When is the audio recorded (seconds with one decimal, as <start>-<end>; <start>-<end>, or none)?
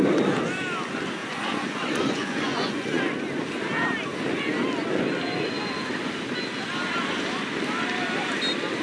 0.0-1.2; 3.0-8.8